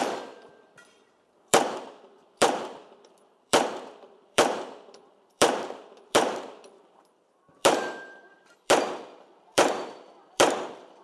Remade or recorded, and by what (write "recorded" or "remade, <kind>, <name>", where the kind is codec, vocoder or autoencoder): remade, vocoder, BigVGAN v2